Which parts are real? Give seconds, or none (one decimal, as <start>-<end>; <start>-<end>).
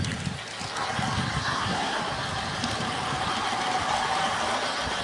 0.0-1.4; 2.0-5.0